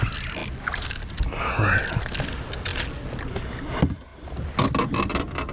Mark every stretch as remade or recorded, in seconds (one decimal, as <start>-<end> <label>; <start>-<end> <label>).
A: 0.0-5.5 recorded